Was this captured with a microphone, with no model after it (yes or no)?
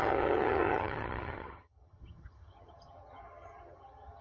no